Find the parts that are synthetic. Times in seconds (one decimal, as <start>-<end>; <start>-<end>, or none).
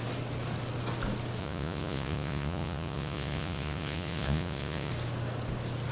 1.4-4.9